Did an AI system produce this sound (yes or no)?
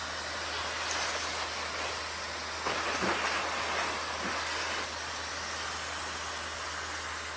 no